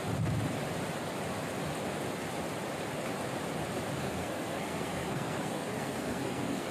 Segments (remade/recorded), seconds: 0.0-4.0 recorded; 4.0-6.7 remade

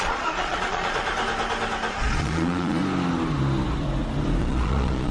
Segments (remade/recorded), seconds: 0.0-1.0 remade; 1.0-1.9 recorded; 1.9-2.8 remade; 2.8-4.4 recorded; 4.4-5.1 remade